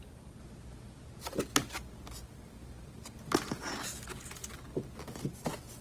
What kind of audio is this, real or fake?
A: real